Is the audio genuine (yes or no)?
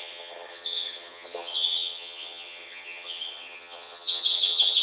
no